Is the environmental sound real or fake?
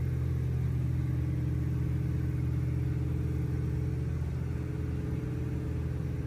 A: real